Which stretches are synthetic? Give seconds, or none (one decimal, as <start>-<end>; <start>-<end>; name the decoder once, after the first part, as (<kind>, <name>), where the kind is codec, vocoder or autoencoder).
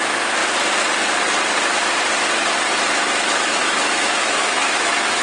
0.0-0.4 (autoencoder, DAC-VAE); 3.2-5.2